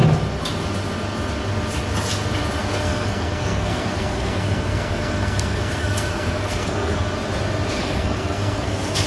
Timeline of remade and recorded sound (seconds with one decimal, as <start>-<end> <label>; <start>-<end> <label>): 0.0-2.6 recorded; 2.6-7.1 remade; 7.1-7.8 recorded; 7.8-9.1 remade